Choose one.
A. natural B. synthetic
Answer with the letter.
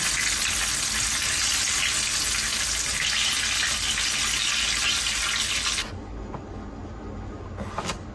A